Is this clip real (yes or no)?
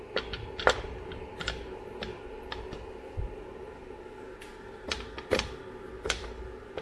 yes